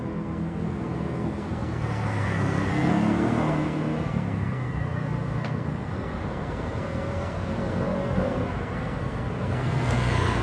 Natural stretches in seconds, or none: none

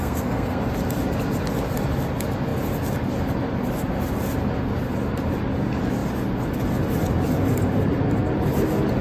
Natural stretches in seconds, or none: 0.6-9.0

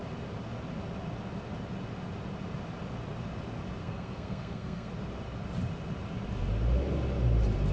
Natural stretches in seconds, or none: 0.0-3.8; 4.9-7.7

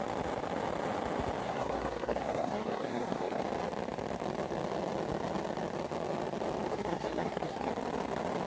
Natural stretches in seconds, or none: 0.0-1.4; 3.4-6.7; 7.7-8.5

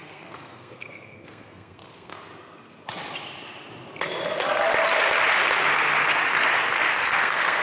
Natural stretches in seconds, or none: 2.3-6.9

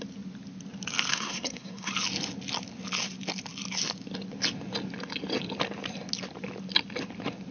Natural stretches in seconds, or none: 0.0-1.1; 1.9-7.5

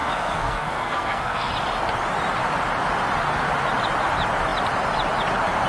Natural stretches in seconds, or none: 1.5-5.7